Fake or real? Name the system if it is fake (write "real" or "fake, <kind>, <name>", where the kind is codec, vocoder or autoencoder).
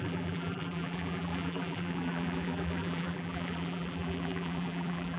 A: fake, vocoder, BigVGAN v2